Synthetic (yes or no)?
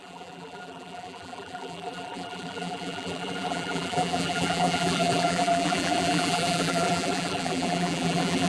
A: yes